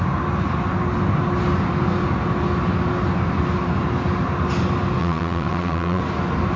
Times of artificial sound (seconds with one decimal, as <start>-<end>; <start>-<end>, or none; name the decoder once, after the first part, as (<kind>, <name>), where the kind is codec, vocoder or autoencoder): 5.0-6.0 (vocoder, Vocos)